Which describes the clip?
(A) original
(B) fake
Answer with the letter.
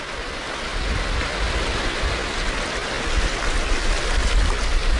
A